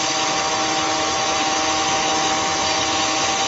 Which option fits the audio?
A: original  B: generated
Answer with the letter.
A